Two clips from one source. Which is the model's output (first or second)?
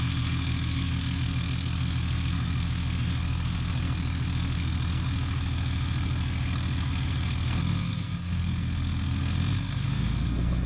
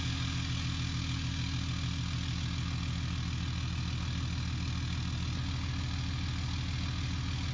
first